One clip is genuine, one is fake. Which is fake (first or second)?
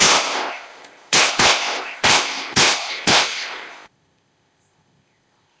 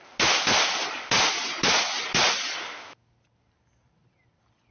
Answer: first